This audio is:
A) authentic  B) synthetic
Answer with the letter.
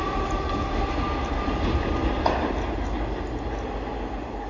A